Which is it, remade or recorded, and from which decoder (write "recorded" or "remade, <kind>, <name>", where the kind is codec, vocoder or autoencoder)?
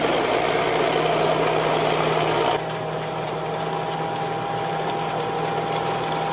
recorded